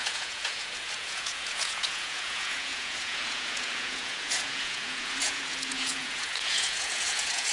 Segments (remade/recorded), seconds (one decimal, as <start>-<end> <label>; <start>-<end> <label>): 0.0-7.5 remade